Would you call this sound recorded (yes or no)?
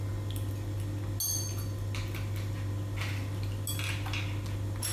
yes